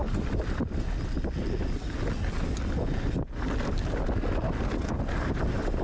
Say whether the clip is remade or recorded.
recorded